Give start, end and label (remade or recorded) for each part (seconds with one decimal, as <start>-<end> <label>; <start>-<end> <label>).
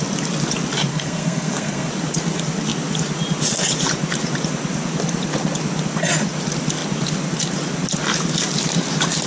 0.0-0.9 recorded; 0.9-1.9 remade; 1.9-9.3 recorded